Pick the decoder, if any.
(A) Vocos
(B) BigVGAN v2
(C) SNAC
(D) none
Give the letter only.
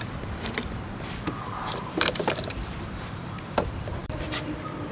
B